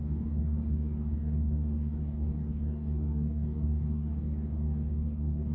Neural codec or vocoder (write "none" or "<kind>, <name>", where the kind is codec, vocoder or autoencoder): codec, DAC